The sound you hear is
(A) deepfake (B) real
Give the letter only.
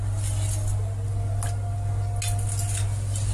B